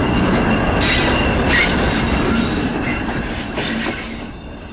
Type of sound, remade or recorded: recorded